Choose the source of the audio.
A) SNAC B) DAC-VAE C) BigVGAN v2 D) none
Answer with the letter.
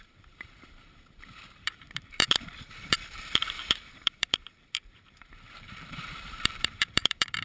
C